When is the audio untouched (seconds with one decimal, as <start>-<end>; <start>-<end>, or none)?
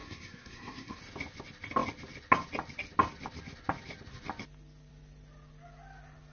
1.0-6.3